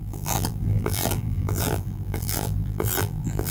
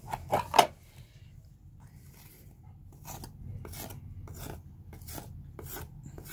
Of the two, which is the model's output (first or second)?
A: first